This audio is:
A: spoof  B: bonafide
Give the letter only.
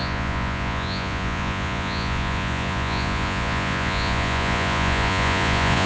A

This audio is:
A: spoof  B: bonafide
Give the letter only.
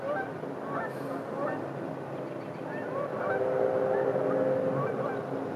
B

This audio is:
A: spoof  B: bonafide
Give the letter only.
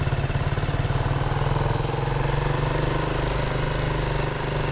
B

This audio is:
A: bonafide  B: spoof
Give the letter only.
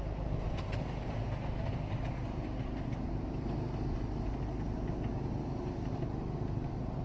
A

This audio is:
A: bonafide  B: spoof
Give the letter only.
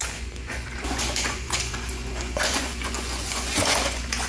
B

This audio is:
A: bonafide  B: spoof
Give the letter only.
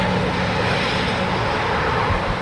A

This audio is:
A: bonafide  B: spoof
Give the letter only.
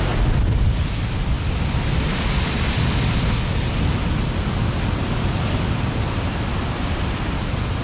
A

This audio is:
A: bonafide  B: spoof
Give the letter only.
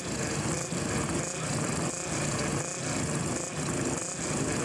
A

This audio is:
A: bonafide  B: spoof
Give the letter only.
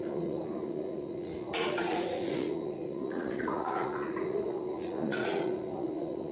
B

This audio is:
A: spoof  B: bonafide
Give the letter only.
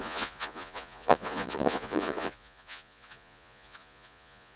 A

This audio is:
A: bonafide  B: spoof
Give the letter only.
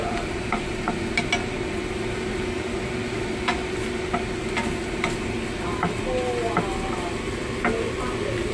A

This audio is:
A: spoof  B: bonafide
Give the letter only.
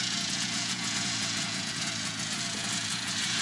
A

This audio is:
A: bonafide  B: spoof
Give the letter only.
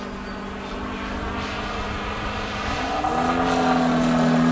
A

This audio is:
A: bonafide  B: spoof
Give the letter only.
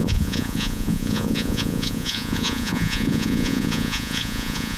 B